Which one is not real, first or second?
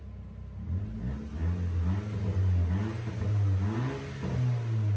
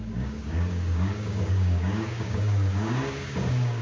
second